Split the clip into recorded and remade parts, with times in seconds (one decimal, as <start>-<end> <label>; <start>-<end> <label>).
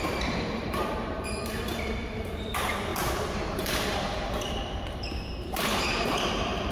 0.0-6.7 remade